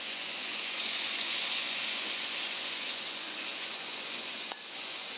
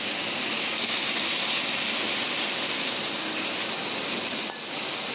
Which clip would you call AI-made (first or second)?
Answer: first